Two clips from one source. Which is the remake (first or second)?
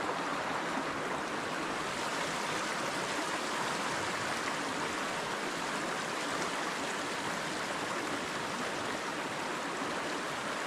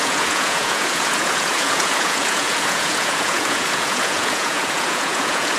second